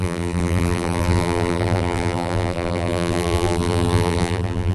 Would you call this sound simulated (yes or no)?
yes